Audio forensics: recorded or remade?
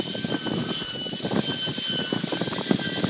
recorded